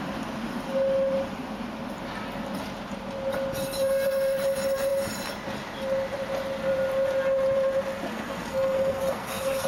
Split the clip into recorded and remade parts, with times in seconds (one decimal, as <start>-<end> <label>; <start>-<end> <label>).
0.0-8.1 recorded; 8.1-9.7 remade